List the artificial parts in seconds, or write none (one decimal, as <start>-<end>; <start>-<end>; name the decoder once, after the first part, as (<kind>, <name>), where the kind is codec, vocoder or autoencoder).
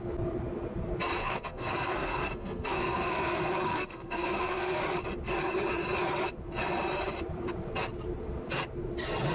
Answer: 1.2-4.8 (codec, SNAC)